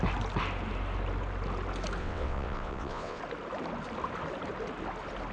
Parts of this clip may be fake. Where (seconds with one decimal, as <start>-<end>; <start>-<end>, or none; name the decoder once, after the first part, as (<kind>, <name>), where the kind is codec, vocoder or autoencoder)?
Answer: 2.0-3.2 (vocoder, WaveNeXt)